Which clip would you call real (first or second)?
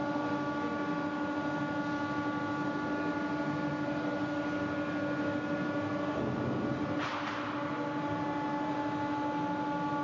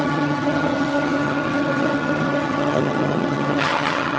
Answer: first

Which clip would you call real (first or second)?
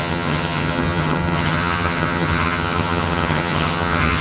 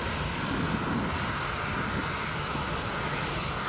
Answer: second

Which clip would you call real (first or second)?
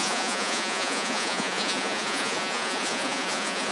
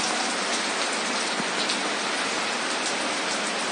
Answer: second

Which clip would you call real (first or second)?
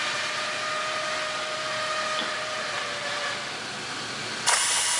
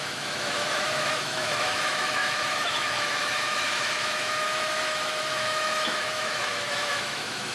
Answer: first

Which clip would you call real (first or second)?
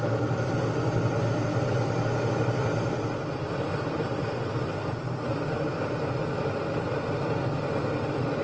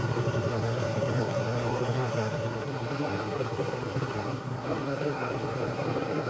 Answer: first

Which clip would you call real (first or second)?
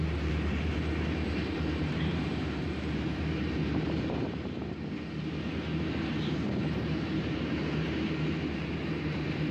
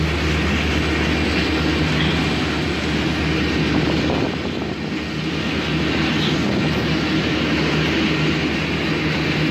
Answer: second